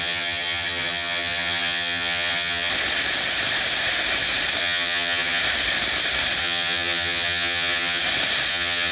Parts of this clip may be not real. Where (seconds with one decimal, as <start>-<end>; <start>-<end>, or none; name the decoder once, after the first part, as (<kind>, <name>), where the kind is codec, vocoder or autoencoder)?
0.0-2.7 (vocoder, HiFi-GAN); 4.6-5.4; 6.4-8.0; 8.5-8.9